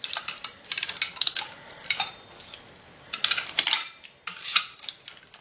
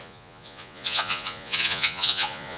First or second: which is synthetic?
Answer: second